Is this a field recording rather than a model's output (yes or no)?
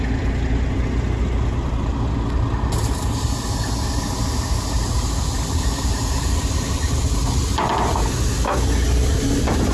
yes